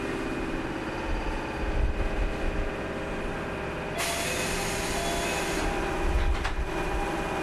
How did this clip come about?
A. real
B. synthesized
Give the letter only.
A